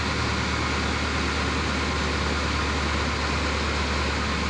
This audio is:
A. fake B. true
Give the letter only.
B